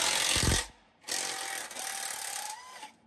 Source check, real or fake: real